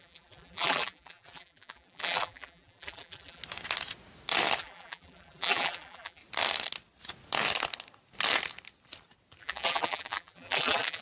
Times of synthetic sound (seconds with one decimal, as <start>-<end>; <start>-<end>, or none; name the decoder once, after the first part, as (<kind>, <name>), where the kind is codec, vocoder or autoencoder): 0.0-3.4 (vocoder, BigVGAN v2); 4.6-6.2; 9.4-11.0

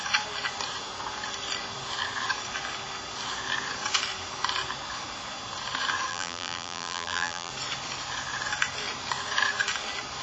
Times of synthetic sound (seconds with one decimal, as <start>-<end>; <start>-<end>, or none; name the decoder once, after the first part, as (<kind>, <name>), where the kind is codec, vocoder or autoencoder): 6.1-7.5 (vocoder, BigVGAN v2)

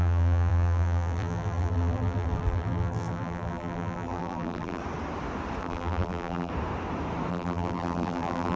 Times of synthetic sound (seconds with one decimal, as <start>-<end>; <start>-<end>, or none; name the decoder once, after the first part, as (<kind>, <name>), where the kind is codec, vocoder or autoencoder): 0.0-4.8 (vocoder, BigVGAN v2); 5.6-6.5; 7.3-8.6

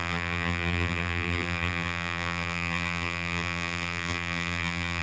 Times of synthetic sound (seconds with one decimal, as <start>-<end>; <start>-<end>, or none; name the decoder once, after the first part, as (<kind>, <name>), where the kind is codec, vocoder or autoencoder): 0.0-5.0 (vocoder, BigVGAN v2)

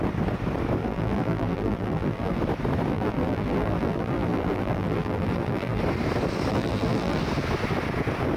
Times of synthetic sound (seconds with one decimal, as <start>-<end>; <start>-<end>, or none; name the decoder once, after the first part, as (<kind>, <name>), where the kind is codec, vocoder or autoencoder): 0.8-2.4 (vocoder, BigVGAN v2); 2.9-5.8; 6.5-7.2

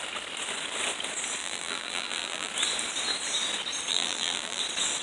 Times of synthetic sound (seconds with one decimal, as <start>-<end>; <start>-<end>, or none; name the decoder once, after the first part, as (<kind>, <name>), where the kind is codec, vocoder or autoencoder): 1.4-2.5 (vocoder, BigVGAN v2); 3.9-4.6

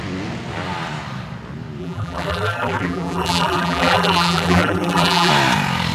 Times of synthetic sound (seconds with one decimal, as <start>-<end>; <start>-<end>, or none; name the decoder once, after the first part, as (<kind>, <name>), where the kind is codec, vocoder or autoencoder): 1.8-5.3 (vocoder, BigVGAN v2)